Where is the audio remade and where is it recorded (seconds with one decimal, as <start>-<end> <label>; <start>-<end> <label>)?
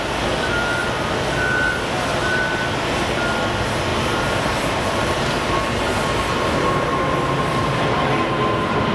0.0-3.9 recorded; 3.9-4.8 remade; 4.8-8.9 recorded